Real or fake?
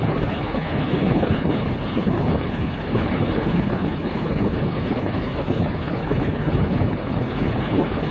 fake